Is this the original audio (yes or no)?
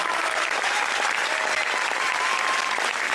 yes